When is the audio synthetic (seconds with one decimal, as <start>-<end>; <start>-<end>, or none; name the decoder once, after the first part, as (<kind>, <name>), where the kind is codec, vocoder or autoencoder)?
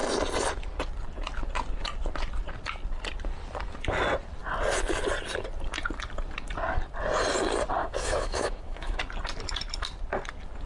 7.8-9.0 (autoencoder, DAC-VAE)